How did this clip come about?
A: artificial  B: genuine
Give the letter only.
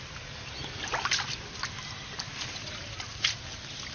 B